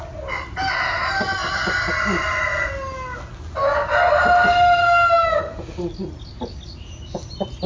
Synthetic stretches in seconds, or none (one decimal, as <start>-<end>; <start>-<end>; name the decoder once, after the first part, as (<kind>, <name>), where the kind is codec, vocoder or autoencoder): 4.8-5.4 (codec, SNAC)